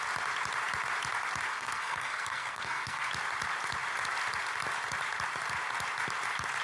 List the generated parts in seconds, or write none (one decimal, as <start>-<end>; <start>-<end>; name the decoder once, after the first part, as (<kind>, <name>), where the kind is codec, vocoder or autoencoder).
1.5-3.1 (codec, SNAC)